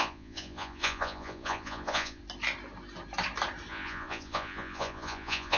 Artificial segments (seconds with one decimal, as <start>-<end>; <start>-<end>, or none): 0.0-2.2; 3.7-5.6